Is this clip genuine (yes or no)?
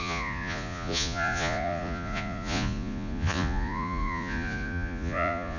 no